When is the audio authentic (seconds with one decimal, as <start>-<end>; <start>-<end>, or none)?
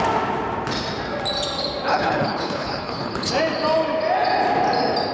0.0-1.9; 3.3-5.1